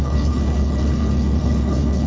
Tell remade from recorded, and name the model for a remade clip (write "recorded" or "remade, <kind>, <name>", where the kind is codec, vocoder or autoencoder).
remade, codec, HILCodec